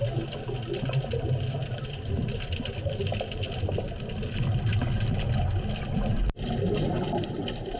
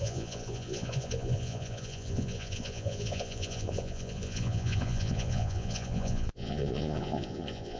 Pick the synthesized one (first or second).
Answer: second